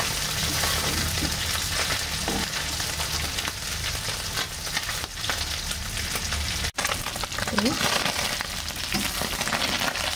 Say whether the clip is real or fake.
real